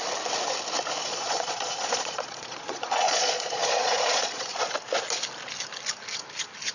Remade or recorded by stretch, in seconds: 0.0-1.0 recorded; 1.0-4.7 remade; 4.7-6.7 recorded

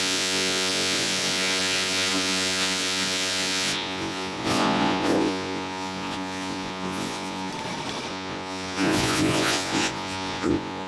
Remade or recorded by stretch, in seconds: 0.0-7.5 remade; 7.5-8.1 recorded; 8.1-10.9 remade

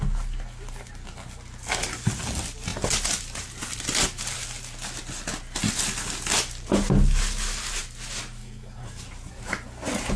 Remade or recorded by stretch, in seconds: 0.0-8.4 recorded; 8.4-9.0 remade; 9.0-10.2 recorded